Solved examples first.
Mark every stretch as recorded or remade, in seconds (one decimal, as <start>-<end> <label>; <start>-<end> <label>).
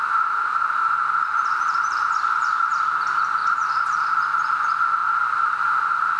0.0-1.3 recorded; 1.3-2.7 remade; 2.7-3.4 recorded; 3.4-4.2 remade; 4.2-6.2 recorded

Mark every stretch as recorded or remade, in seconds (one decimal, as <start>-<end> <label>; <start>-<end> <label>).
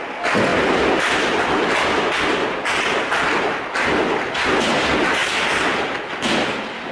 0.0-6.9 recorded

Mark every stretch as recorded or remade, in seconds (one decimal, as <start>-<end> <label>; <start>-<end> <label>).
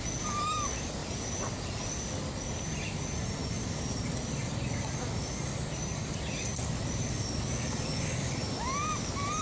0.0-9.4 recorded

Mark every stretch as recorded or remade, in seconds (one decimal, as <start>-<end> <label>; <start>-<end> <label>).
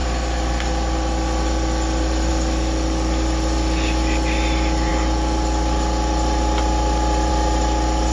0.0-8.1 recorded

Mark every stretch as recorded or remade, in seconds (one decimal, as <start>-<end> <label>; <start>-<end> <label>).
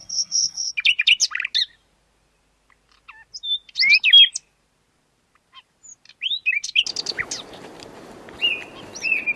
0.0-0.7 remade; 0.7-9.4 recorded